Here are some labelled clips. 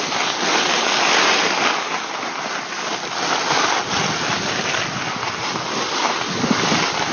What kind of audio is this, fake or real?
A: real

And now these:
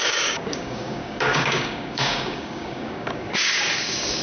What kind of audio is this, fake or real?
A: fake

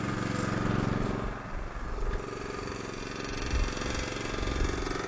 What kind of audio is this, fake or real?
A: real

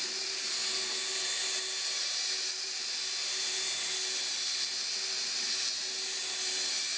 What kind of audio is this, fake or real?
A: real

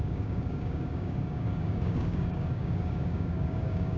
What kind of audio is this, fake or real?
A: fake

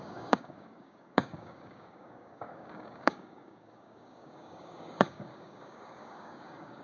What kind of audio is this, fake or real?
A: fake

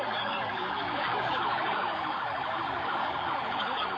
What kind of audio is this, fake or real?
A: fake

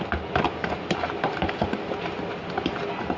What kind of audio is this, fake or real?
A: real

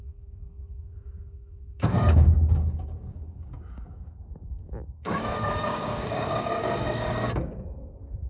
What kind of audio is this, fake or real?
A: fake